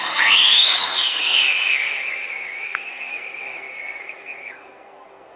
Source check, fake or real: fake